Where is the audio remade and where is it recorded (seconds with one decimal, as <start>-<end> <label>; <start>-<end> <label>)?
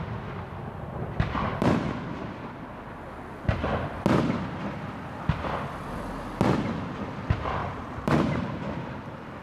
0.0-1.5 recorded; 1.5-2.4 remade; 2.4-7.6 recorded; 7.6-9.4 remade